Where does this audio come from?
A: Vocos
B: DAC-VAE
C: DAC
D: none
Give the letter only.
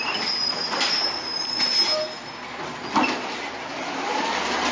D